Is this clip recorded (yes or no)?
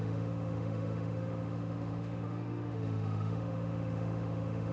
no